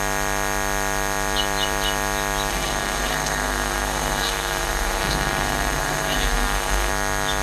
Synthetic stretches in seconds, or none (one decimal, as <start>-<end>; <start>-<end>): 2.5-6.9